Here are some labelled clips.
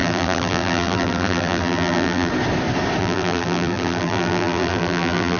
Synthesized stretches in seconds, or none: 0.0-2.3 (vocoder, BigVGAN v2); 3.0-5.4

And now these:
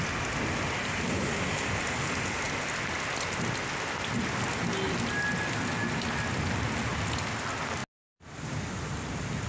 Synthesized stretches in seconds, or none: none

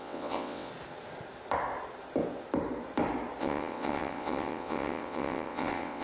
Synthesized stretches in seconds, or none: 0.0-0.7 (vocoder, WaveNeXt); 3.4-6.0

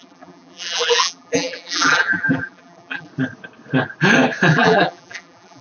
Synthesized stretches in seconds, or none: 0.0-3.1 (vocoder, BigVGAN v2); 4.5-5.6

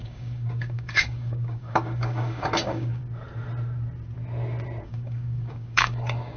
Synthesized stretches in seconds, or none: 0.0-3.0 (codec, DAC); 4.8-6.4